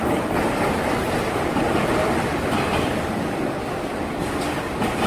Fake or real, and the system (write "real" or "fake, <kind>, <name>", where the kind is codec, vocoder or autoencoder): real